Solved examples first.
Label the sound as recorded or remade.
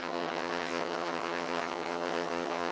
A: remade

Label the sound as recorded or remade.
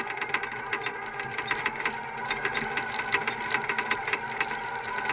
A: recorded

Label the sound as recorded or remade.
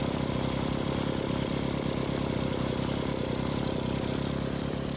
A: remade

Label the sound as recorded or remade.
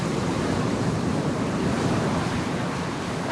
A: remade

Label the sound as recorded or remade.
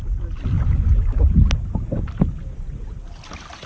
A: recorded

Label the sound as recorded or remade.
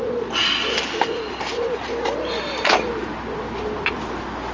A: recorded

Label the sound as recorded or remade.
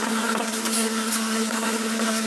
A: remade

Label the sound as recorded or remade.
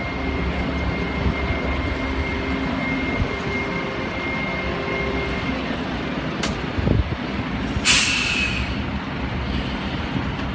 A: recorded